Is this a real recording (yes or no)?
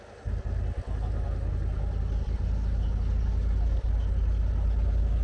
yes